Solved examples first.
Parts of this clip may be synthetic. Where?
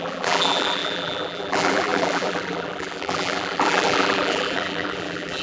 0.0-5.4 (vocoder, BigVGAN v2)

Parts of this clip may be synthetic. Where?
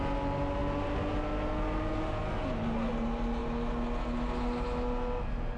none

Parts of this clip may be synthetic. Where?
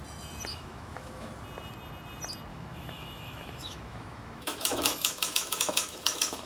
0.5-1.3 (autoencoder, DAC-VAE); 2.5-6.5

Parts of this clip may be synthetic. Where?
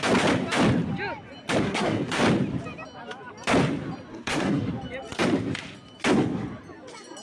1.6-2.2 (codec, SNAC); 4.1-4.7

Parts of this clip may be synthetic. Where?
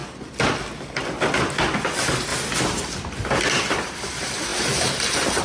1.7-2.3 (vocoder, BigVGAN v2); 3.5-5.4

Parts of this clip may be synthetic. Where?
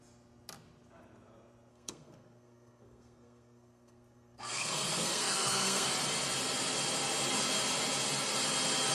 1.7-5.9 (codec, SNAC)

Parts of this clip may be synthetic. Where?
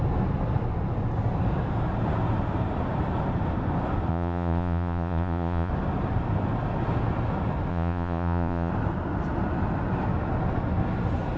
4.1-5.7 (vocoder, Vocos); 7.7-8.7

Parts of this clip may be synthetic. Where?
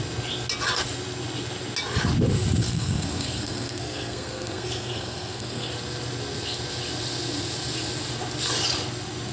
2.6-5.7 (codec, SNAC)